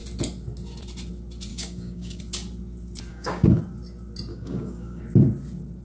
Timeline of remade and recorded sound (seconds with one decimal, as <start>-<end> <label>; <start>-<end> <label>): 0.0-1.5 recorded; 1.5-2.2 remade; 2.2-3.1 recorded; 3.1-3.6 remade; 3.6-4.3 recorded; 4.3-5.0 remade; 5.0-5.8 recorded